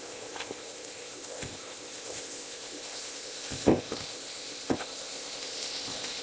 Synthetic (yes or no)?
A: yes